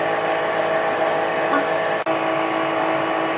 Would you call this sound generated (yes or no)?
no